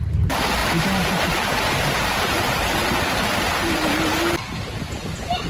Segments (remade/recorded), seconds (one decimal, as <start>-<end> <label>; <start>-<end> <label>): 0.0-0.6 recorded; 0.6-3.9 remade; 3.9-5.5 recorded